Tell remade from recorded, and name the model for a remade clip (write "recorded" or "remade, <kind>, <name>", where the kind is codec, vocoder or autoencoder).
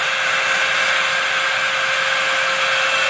recorded